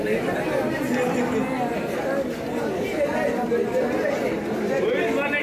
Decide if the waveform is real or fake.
real